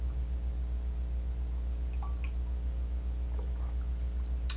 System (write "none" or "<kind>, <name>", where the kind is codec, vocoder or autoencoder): none